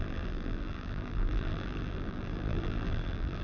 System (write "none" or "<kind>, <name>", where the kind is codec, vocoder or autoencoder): vocoder, BigVGAN v2